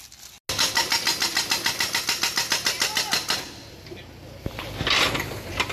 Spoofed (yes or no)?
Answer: no